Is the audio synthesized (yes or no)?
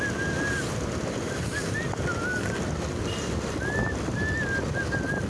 no